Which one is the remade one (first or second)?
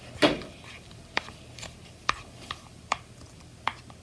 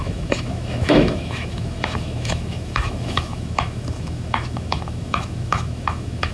second